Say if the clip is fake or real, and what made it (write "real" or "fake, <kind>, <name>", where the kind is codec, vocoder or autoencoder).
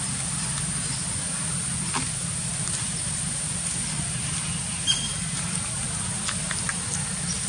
real